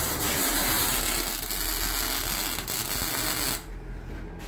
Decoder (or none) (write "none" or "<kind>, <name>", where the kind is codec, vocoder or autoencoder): none